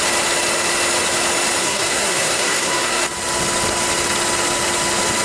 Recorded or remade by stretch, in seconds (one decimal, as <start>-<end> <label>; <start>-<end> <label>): 0.0-1.6 recorded; 1.6-3.0 remade; 3.0-5.2 recorded